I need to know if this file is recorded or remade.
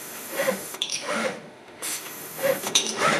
remade